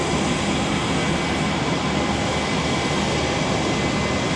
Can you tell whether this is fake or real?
real